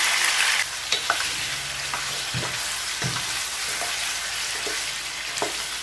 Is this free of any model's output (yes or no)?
yes